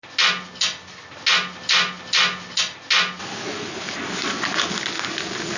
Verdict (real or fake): real